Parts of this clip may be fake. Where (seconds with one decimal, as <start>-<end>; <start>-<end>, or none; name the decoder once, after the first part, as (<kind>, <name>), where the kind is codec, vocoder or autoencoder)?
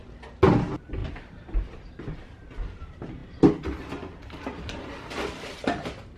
1.0-2.2 (vocoder, BigVGAN v2); 3.2-4.8